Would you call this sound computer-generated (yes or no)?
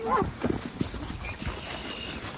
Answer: no